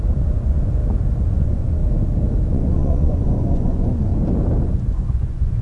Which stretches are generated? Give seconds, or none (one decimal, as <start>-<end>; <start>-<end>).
0.0-0.8; 1.3-1.8; 2.5-4.1; 4.6-5.6